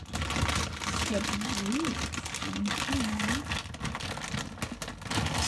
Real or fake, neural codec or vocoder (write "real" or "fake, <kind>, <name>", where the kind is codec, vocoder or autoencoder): real